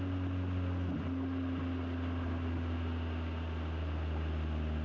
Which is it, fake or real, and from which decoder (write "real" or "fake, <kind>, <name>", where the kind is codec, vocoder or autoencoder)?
real